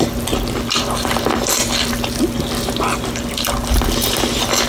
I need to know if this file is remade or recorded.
recorded